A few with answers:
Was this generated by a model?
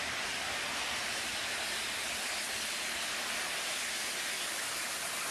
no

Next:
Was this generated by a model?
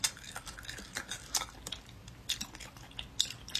no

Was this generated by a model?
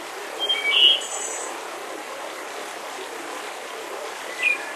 no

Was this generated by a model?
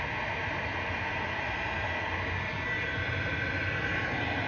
no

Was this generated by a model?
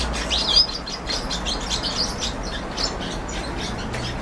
no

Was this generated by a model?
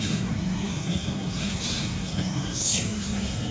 yes